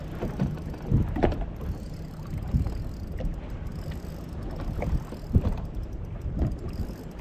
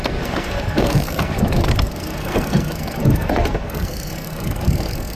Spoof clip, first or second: second